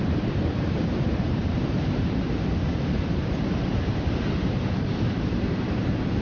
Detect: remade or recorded remade